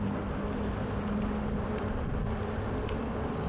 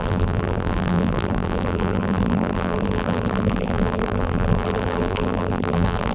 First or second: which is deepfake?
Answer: second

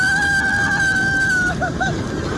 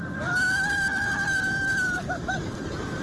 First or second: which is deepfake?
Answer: second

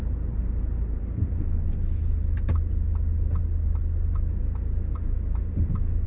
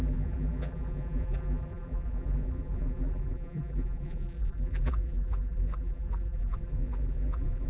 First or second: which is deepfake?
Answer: second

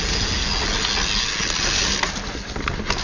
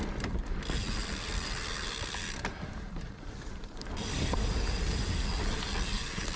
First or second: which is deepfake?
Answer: second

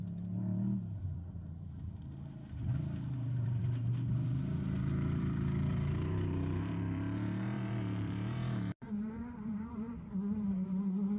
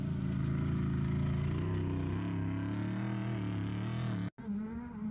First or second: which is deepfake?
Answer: first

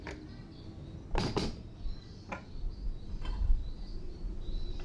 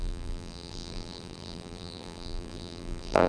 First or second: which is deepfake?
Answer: second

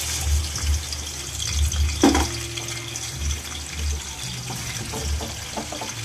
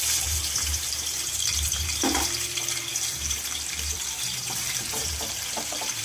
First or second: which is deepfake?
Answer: second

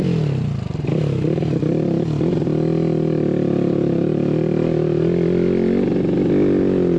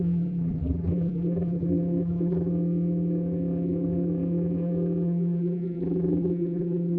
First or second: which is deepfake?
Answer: second